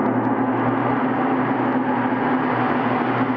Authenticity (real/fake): real